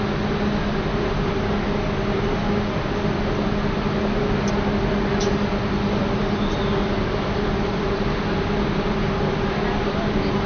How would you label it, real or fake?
real